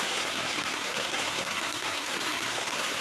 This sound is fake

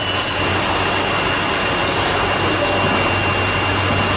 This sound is real